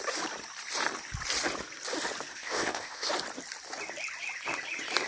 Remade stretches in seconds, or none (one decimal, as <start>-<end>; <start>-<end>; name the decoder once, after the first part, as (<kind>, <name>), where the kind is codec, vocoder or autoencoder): 2.3-3.1 (codec, ZipCodec)

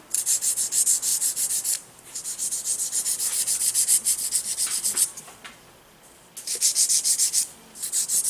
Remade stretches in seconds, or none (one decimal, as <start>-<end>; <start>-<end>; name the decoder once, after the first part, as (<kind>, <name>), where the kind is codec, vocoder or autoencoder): 1.1-2.1 (vocoder, BigVGAN v2)

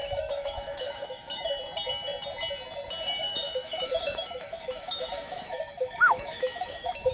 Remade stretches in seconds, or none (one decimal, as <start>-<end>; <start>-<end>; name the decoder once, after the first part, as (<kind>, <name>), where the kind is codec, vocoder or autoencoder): 0.0-1.6 (autoencoder, DAC-VAE); 3.2-7.1

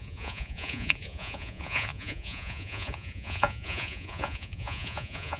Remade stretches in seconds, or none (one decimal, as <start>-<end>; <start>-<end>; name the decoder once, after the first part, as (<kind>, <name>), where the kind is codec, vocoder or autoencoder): 0.0-5.4 (vocoder, Vocos)

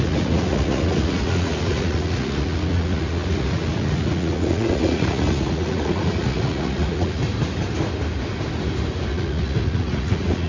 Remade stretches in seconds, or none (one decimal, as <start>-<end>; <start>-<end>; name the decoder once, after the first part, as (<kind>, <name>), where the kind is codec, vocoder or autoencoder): 0.0-7.2 (vocoder, Vocos); 9.1-10.5

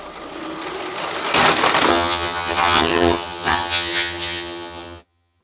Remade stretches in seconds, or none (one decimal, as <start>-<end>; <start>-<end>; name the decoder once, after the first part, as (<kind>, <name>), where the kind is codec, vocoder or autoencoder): 1.9-5.4 (vocoder, HiFi-GAN)

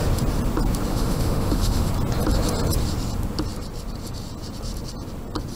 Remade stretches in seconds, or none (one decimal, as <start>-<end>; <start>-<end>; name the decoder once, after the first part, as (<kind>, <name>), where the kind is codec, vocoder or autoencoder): 0.9-1.9 (autoencoder, DAC-VAE)

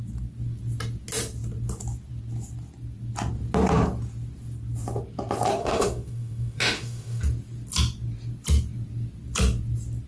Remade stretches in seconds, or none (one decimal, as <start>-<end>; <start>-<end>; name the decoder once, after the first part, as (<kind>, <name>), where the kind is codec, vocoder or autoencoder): 5.6-7.2 (autoencoder, DAC-VAE)